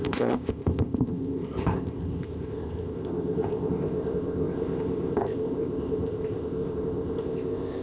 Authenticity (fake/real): fake